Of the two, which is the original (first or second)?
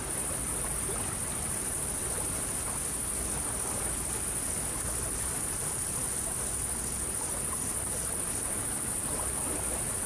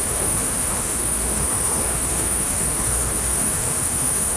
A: first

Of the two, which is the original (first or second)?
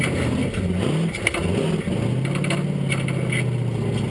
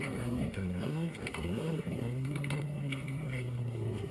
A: first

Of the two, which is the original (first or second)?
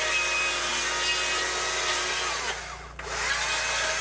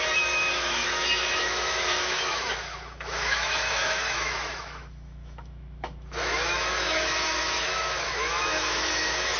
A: first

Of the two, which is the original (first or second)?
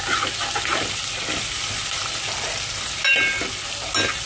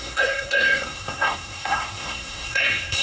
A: first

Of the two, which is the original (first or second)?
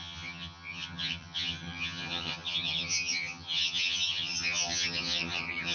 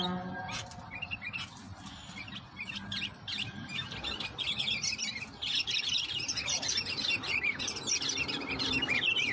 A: second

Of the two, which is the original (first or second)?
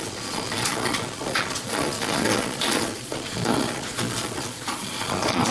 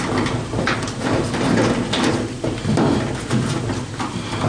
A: second